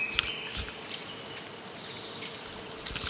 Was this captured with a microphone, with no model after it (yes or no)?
yes